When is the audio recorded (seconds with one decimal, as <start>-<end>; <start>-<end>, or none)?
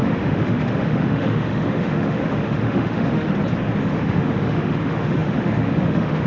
3.3-3.8